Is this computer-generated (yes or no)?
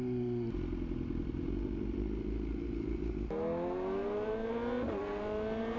no